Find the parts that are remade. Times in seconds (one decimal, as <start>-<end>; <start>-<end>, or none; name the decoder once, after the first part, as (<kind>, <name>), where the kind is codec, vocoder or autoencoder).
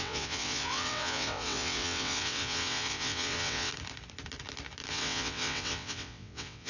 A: 0.0-3.7 (vocoder, WaveNeXt); 4.9-6.7